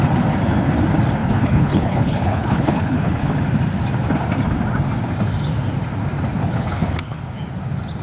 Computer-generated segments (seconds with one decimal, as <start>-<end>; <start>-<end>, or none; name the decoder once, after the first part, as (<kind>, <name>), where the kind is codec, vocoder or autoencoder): 1.2-3.3 (codec, HILCodec); 6.4-7.2